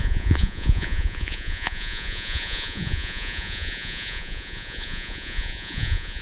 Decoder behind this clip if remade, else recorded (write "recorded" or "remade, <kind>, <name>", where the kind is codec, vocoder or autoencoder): remade, vocoder, Vocos